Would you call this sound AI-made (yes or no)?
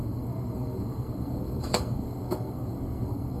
yes